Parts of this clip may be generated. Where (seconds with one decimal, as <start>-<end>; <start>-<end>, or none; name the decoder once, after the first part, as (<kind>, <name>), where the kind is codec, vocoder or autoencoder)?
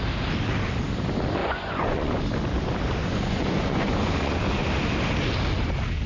1.4-2.2 (vocoder, Vocos); 3.0-4.6